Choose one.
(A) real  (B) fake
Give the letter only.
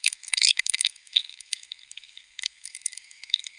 B